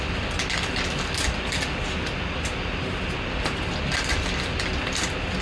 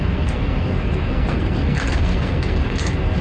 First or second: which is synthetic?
second